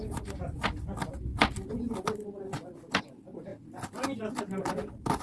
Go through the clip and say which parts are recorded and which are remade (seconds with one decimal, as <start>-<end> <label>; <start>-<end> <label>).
0.0-5.2 recorded